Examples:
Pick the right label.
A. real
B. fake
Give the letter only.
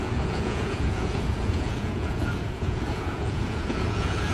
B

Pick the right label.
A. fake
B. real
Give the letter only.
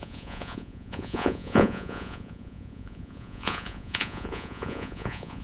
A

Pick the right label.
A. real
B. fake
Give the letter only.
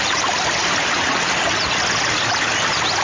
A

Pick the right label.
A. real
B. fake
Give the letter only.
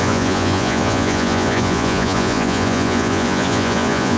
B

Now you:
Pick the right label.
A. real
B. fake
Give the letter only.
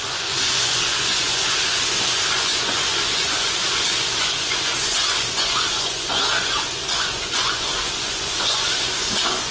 B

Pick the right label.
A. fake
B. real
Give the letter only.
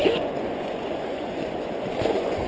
A